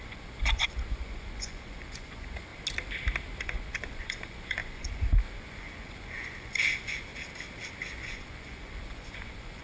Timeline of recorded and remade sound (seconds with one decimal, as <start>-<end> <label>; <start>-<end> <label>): 0.0-2.5 remade; 2.5-3.4 recorded; 3.4-7.1 remade; 7.1-7.9 recorded; 7.9-9.6 remade